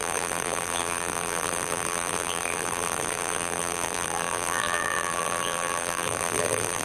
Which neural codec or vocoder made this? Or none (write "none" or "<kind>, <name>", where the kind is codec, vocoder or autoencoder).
vocoder, BigVGAN v2